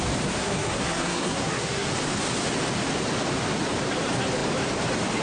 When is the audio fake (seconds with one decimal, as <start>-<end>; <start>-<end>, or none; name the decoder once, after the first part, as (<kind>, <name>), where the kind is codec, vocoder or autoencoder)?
0.4-1.9 (codec, SNAC)